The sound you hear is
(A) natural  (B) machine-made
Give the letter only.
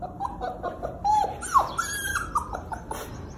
A